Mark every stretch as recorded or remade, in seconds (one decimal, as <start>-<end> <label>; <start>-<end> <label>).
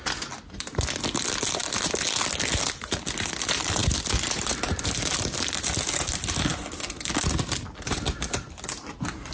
0.0-9.3 recorded